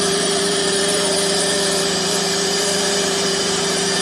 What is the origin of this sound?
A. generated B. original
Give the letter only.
A